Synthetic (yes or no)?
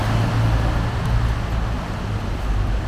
no